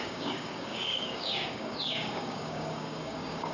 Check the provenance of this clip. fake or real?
fake